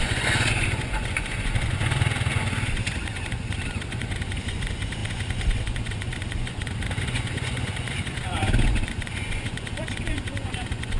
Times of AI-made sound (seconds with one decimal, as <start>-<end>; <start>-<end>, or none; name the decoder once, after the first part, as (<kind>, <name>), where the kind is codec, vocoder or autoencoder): 0.0-11.0 (vocoder, Vocos)